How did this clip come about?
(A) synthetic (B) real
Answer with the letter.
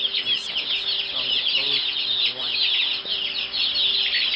B